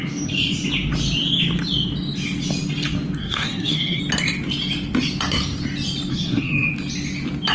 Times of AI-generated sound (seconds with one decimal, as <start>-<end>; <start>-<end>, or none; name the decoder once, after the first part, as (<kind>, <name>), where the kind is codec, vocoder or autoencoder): 3.2-4.0 (codec, SNAC); 6.1-6.7

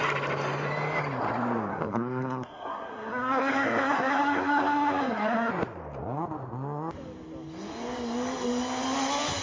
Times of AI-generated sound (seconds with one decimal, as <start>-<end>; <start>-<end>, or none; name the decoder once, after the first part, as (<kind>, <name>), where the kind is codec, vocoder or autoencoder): 1.7-5.5 (codec, SNAC)

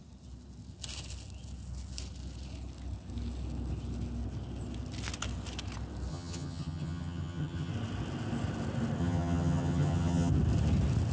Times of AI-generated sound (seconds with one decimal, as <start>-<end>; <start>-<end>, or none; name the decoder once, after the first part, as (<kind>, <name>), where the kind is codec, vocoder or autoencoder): 6.1-7.7 (vocoder, HiFi-GAN); 9.0-10.3